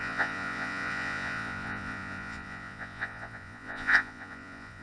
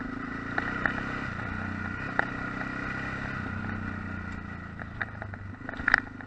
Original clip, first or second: second